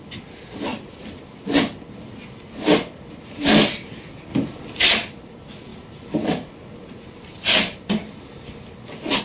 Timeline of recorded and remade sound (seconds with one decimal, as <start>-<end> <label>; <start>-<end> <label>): 0.0-9.2 recorded